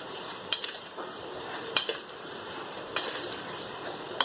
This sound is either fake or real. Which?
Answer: fake